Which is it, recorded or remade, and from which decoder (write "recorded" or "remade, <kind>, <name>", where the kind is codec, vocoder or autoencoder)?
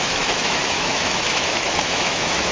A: remade, autoencoder, DAC-VAE